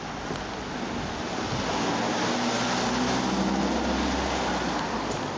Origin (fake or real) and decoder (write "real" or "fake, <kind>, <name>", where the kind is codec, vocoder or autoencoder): real